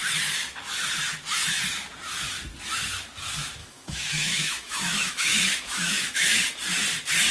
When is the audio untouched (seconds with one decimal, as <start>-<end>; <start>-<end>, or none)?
0.0-3.6; 6.4-7.3